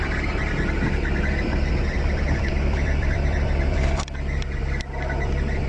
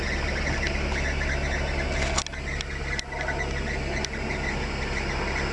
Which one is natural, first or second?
second